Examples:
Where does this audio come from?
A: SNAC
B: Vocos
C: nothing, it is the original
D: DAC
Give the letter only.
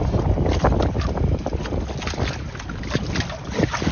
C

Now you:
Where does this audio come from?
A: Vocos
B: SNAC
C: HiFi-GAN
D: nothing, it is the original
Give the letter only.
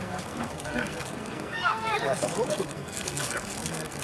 B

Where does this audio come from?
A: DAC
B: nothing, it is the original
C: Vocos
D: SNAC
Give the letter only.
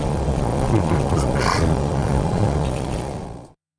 C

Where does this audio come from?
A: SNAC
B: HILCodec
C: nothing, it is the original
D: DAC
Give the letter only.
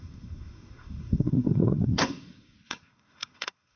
A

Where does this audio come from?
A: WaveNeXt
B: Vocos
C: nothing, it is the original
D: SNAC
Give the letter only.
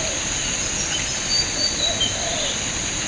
C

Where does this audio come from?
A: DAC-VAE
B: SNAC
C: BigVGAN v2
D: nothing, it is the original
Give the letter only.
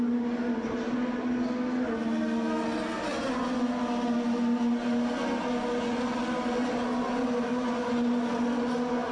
D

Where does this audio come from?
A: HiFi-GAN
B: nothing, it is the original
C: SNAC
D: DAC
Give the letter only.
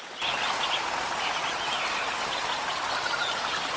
B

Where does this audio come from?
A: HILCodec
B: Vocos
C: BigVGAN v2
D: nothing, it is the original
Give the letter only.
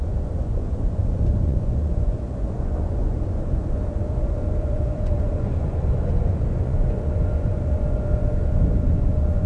B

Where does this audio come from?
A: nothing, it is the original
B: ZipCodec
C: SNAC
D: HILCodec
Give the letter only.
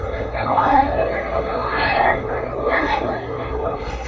C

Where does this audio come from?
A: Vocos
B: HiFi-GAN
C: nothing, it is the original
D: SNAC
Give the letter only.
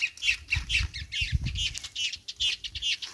C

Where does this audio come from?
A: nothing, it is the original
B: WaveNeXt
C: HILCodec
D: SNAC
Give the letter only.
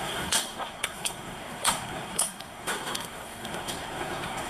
D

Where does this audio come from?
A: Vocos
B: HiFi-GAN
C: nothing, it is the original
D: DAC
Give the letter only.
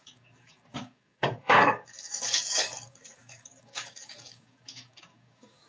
D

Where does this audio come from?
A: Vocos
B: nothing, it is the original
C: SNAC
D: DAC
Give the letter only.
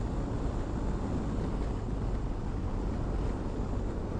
B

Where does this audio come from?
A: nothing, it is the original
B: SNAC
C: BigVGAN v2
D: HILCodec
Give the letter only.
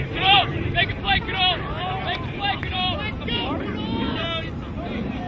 C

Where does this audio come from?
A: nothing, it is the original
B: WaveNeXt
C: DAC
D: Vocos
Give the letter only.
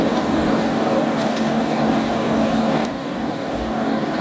C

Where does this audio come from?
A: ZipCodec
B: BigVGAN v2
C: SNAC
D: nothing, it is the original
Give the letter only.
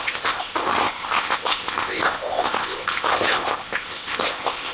A